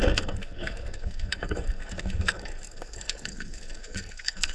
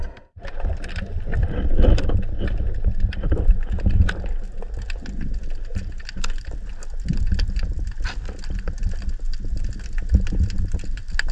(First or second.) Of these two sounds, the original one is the second